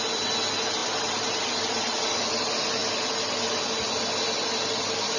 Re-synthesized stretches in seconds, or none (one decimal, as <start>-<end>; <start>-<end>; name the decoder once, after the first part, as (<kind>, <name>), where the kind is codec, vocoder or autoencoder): 0.8-2.3 (vocoder, BigVGAN v2)